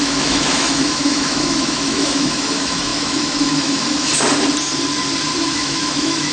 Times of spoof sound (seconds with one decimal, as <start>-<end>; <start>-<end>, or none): 0.0-4.1; 5.4-6.3